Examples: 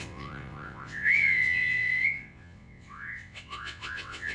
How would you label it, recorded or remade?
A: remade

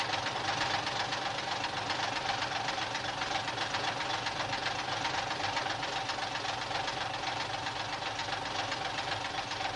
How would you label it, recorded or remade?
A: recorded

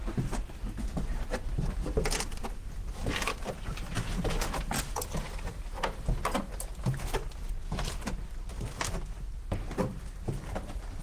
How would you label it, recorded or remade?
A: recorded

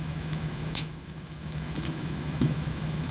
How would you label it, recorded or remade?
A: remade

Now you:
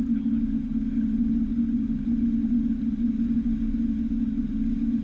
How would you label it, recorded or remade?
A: recorded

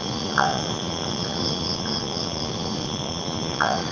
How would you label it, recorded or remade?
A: remade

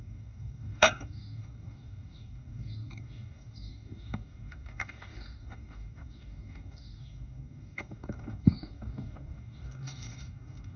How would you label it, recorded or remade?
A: remade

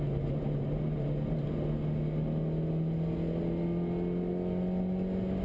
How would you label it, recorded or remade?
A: recorded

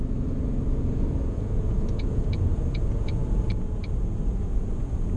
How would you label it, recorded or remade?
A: remade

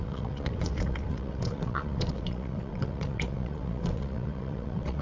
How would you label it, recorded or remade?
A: remade